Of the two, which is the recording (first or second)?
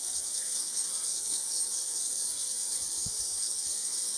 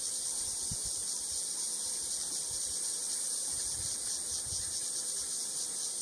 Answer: second